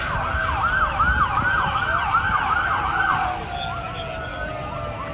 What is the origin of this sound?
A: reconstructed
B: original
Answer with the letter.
B